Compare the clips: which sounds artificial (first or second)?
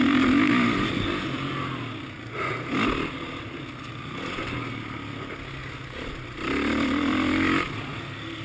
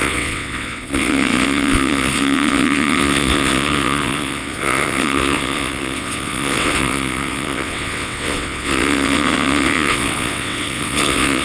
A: second